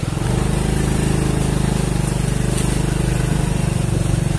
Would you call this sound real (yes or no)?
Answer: yes